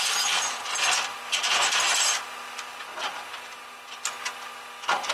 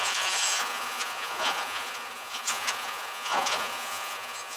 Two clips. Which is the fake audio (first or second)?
second